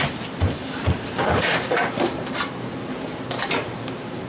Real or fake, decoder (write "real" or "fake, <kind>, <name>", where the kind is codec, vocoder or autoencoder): fake, vocoder, BigVGAN v2